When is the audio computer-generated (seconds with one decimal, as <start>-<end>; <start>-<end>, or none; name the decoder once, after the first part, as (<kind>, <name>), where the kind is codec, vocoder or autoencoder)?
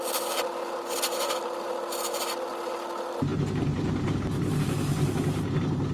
none